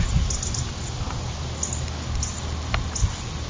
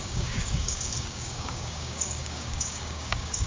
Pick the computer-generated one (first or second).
second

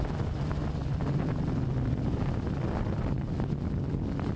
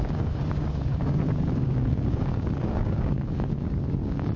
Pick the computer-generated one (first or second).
second